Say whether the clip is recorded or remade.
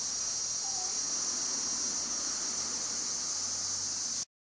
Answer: recorded